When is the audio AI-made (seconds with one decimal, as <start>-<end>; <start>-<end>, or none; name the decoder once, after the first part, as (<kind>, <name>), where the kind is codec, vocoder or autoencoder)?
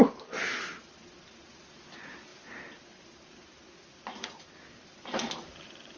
none